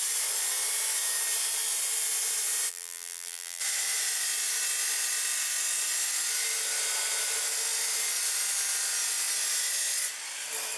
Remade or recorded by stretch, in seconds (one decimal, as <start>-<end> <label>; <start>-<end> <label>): 0.0-2.7 recorded; 2.7-3.6 remade; 3.6-10.8 recorded